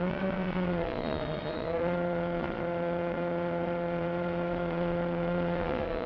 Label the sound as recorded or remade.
remade